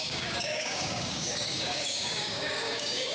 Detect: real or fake fake